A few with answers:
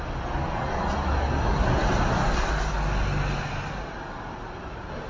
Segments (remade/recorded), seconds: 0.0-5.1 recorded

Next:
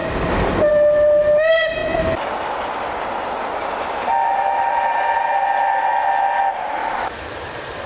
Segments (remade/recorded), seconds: 0.0-6.8 recorded; 6.8-7.3 remade; 7.3-7.9 recorded

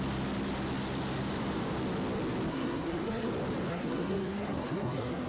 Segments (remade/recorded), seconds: 0.0-2.5 recorded; 2.5-3.3 remade; 3.3-3.7 recorded; 3.7-5.3 remade